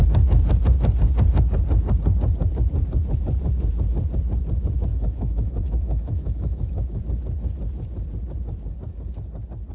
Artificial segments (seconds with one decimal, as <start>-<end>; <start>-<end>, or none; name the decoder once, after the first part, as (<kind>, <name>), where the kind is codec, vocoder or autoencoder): 4.9-7.0 (autoencoder, DAC-VAE)